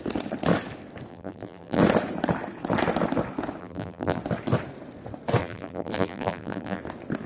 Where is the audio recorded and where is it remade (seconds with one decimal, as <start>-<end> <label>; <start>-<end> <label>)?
0.0-1.1 recorded; 1.1-1.8 remade; 1.8-3.6 recorded; 3.6-4.2 remade; 4.2-5.4 recorded; 5.4-6.8 remade; 6.8-7.3 recorded